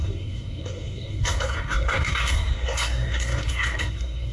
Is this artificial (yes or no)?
yes